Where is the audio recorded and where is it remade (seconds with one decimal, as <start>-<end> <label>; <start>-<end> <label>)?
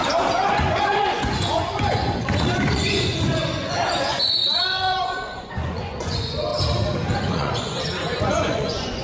0.0-0.5 recorded; 0.5-6.5 remade; 6.5-7.2 recorded; 7.2-9.0 remade